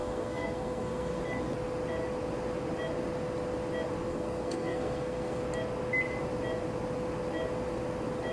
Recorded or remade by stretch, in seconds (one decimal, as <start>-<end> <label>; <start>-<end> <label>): 0.0-1.2 remade; 1.2-4.1 recorded; 4.1-5.4 remade; 5.4-8.3 recorded